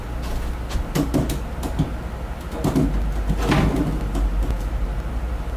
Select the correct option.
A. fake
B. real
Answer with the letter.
B